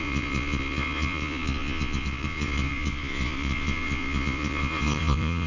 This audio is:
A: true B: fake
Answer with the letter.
B